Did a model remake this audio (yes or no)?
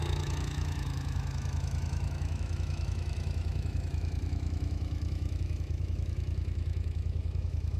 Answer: yes